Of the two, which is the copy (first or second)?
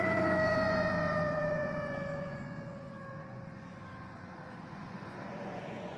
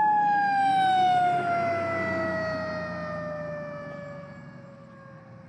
first